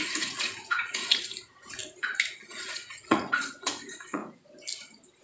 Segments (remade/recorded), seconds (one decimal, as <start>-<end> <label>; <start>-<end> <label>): 0.0-1.8 remade; 1.8-2.4 recorded; 2.4-4.2 remade; 4.2-5.2 recorded